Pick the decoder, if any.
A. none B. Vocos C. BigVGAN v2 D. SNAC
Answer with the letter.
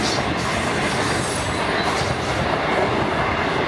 A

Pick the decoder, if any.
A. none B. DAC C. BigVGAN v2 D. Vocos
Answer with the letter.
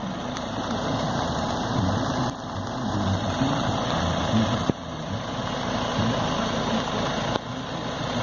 C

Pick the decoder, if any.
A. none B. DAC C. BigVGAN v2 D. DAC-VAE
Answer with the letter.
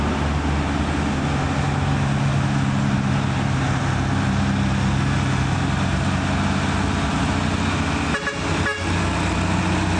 A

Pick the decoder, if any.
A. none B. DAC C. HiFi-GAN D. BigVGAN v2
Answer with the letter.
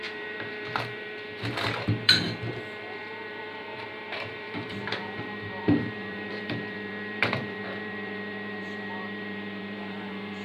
D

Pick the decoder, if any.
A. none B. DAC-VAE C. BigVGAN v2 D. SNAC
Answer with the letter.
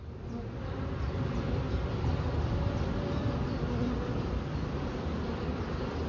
A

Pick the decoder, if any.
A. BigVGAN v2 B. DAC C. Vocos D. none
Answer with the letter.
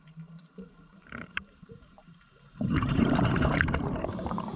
A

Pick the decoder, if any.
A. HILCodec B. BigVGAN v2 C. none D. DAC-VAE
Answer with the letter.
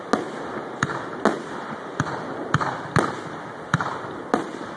C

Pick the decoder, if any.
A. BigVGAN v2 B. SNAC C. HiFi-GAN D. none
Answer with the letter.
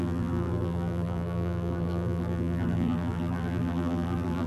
A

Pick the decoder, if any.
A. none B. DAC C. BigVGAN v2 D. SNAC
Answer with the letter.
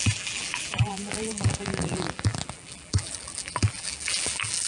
C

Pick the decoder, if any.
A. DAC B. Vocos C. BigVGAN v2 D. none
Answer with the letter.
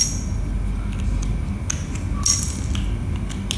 D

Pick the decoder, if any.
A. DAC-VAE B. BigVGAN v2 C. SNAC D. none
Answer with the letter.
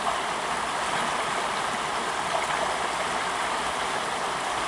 D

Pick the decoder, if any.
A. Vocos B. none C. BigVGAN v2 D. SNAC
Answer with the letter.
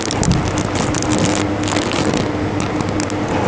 B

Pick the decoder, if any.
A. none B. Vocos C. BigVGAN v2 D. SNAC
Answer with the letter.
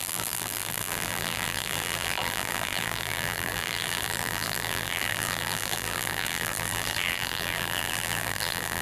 C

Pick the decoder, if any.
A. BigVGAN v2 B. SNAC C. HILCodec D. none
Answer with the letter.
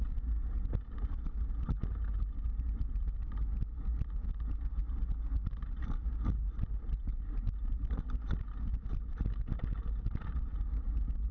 D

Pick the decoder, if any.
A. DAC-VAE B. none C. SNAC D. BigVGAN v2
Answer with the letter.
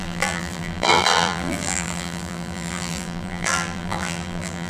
D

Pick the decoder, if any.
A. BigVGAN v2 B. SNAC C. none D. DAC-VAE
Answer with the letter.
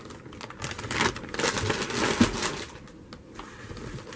C